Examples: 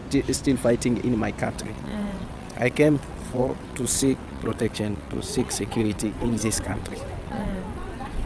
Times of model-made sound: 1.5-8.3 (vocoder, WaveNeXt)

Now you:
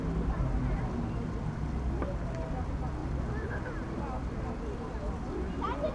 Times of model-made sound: 3.0-4.0 (vocoder, BigVGAN v2)

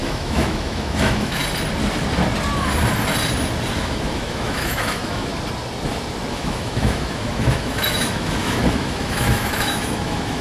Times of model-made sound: 0.0-1.4 (autoencoder, DAC-VAE); 3.8-5.3; 6.3-10.4

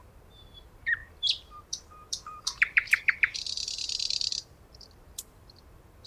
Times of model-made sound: 0.0-6.1 (vocoder, BigVGAN v2)